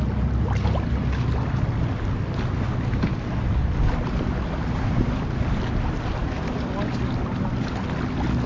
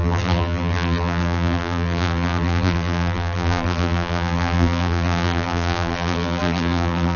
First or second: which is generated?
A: second